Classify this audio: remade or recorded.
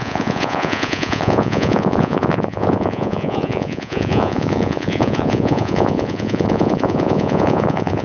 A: remade